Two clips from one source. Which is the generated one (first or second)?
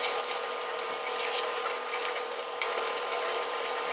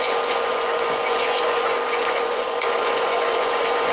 second